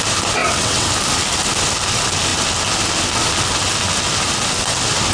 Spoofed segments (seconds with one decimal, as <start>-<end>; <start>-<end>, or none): 0.4-0.9